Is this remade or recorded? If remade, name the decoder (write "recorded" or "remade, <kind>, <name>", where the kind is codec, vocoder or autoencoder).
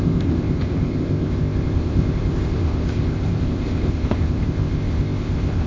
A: remade, codec, ZipCodec